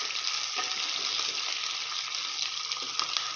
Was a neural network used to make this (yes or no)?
no